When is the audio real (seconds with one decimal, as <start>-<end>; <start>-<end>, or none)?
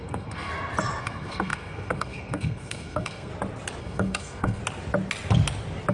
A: 0.5-1.0; 3.3-3.8; 4.6-5.9